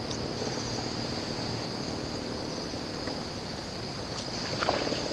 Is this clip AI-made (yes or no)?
no